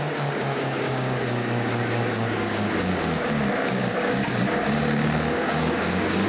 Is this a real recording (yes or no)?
no